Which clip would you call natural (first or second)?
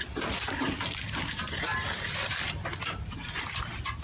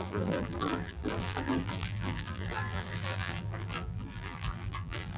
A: first